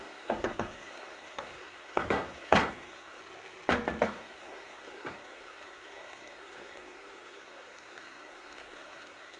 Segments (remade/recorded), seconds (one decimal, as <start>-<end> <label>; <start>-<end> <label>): 0.0-3.2 remade; 3.2-4.0 recorded; 4.0-9.4 remade